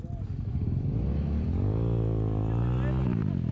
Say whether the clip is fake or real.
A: real